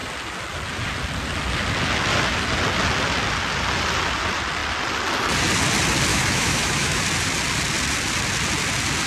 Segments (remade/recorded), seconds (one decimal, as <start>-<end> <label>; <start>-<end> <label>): 0.0-6.1 recorded; 6.1-7.0 remade; 7.0-9.1 recorded